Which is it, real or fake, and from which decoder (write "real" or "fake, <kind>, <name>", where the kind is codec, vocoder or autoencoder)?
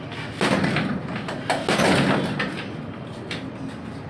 real